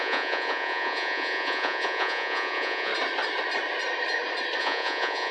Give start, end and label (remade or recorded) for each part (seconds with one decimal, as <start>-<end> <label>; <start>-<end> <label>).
0.0-2.9 remade; 2.9-4.6 recorded; 4.6-5.3 remade